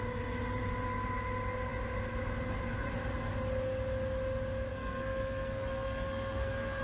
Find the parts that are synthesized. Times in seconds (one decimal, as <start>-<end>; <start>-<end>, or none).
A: 4.7-6.8